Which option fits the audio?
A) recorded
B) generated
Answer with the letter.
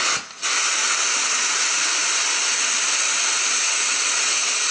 A